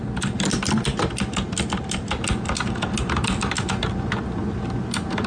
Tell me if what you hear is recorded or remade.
recorded